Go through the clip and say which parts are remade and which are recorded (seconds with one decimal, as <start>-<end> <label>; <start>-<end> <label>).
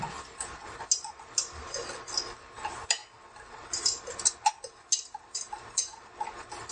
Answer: 0.0-6.7 recorded